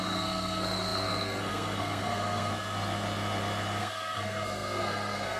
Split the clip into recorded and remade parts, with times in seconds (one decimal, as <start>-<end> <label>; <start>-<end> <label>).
0.0-2.5 remade; 2.5-3.8 recorded; 3.8-5.4 remade